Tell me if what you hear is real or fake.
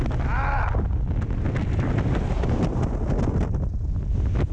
real